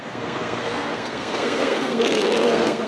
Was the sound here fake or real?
fake